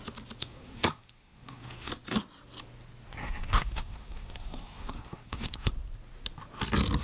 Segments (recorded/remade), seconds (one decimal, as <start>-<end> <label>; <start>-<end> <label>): 0.0-0.4 recorded; 0.4-1.9 remade; 1.9-3.2 recorded; 3.2-5.7 remade; 5.7-7.0 recorded